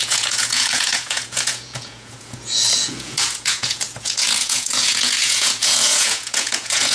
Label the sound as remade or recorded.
remade